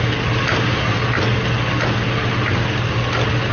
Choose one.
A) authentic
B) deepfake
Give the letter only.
A